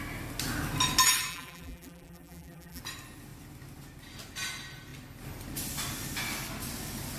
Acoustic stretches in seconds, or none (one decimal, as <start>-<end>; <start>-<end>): 0.0-1.3; 2.8-7.2